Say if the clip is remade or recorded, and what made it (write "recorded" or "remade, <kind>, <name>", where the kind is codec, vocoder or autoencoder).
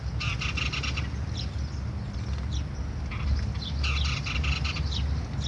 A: recorded